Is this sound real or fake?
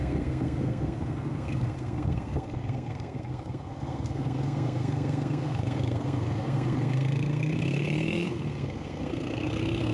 fake